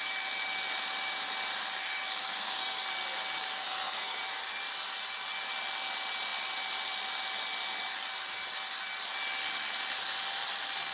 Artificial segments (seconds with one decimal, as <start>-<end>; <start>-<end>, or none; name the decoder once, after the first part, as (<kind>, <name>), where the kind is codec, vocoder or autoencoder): 2.2-2.8 (codec, SNAC); 3.6-4.2